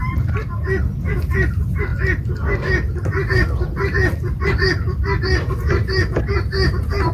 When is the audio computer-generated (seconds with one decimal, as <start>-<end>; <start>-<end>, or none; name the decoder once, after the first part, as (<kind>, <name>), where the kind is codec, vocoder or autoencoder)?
none